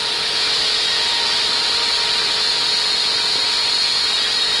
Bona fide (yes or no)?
no